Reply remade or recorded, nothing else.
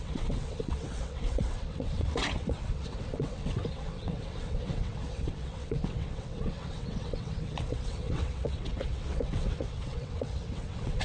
remade